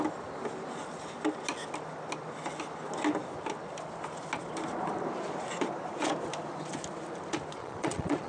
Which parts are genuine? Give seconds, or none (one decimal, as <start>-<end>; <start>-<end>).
0.0-7.6